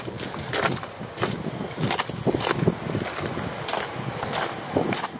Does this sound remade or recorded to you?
recorded